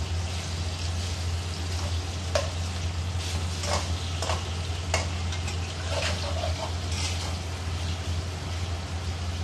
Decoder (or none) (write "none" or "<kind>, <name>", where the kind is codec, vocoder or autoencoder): none